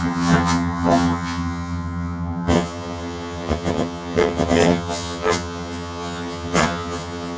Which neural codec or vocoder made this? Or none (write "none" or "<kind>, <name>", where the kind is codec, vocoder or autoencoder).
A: vocoder, HiFi-GAN